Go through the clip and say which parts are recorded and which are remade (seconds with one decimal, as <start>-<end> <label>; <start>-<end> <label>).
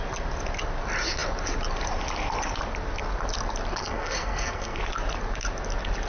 0.0-3.8 recorded; 3.8-4.8 remade; 4.8-6.1 recorded